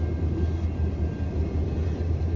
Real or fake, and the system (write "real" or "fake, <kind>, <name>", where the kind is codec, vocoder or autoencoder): real